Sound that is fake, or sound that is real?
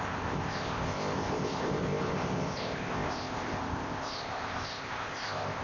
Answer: fake